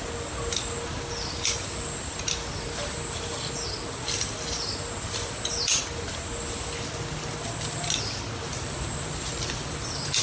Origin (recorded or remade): recorded